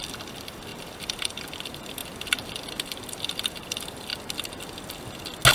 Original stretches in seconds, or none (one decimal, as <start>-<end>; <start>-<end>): 4.1-5.5